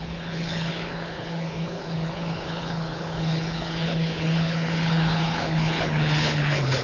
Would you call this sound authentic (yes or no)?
no